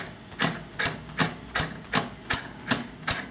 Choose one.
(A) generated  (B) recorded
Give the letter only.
B